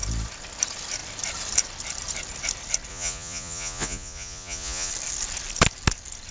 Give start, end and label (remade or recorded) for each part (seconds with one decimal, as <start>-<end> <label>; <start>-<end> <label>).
0.0-2.9 recorded; 2.9-4.9 remade; 4.9-6.3 recorded